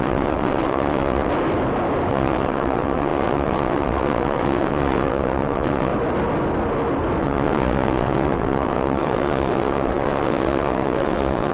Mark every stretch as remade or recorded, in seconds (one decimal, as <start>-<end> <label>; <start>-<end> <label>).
0.0-1.3 remade; 1.3-2.1 recorded; 2.1-5.9 remade; 5.9-7.2 recorded; 7.2-11.5 remade